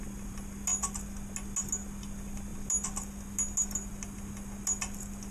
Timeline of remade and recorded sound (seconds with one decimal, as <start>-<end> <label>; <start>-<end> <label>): 0.0-5.3 recorded